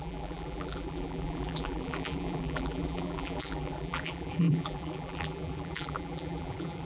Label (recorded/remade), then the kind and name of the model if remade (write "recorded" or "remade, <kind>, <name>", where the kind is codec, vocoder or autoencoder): remade, vocoder, BigVGAN v2